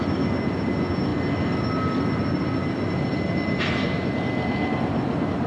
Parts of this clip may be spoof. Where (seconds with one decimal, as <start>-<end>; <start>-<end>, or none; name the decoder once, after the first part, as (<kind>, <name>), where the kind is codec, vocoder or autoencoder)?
none